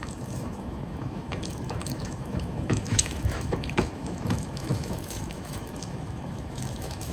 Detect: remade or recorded remade